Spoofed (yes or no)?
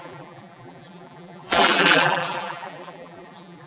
yes